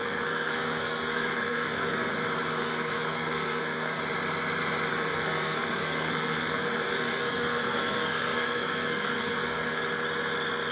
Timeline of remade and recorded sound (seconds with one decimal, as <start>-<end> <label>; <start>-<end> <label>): 0.0-2.1 remade; 2.1-2.6 recorded; 2.6-4.0 remade; 4.0-4.9 recorded; 4.9-9.8 remade; 9.8-10.7 recorded

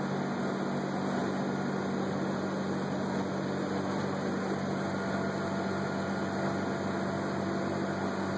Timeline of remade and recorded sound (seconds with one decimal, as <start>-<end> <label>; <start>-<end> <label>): 0.0-8.4 recorded